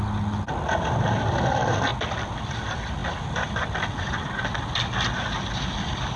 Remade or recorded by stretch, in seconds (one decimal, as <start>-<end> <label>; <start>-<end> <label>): 0.0-6.2 recorded